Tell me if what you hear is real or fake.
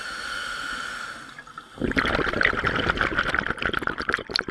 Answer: real